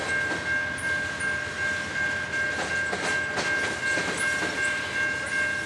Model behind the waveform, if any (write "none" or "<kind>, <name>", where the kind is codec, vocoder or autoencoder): none